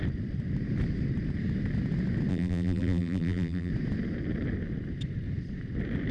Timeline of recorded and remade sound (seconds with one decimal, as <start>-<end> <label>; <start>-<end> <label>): 0.0-2.3 recorded; 2.3-3.7 remade; 3.7-6.1 recorded